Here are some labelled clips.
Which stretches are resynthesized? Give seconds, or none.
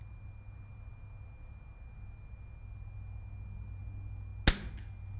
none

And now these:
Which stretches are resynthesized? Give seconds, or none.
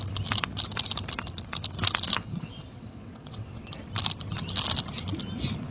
2.3-3.7 (vocoder, WaveNeXt)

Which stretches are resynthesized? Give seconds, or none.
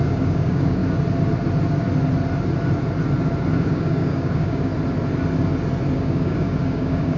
0.0-0.8 (codec, DAC); 3.6-4.7; 5.9-7.2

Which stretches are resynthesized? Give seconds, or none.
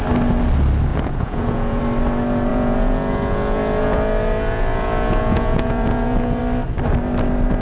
0.9-1.8 (vocoder, Vocos); 2.5-6.4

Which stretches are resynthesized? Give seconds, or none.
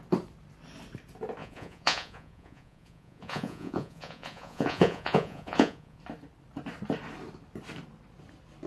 1.4-6.0 (vocoder, Vocos)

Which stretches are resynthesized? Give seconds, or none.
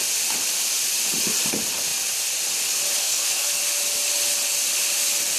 3.0-3.6 (codec, SNAC)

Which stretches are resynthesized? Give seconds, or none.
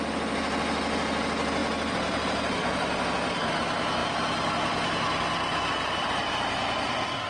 none